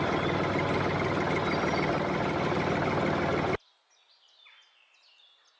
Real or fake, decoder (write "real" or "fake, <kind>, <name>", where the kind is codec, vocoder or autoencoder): real